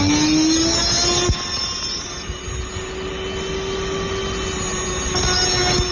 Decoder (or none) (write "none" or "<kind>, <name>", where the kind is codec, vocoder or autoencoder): none